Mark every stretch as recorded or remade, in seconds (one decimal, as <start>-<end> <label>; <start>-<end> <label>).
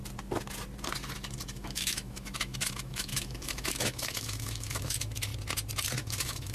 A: 0.0-1.5 recorded; 1.5-5.3 remade; 5.3-5.9 recorded; 5.9-6.5 remade